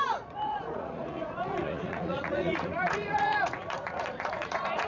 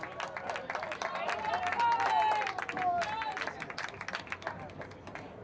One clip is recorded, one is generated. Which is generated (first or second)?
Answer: first